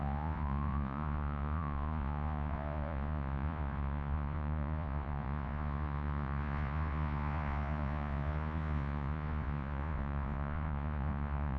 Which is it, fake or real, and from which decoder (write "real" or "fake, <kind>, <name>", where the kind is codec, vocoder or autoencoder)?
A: fake, vocoder, Vocos